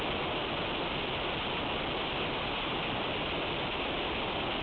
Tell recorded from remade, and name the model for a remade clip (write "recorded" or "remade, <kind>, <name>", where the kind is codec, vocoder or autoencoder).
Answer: recorded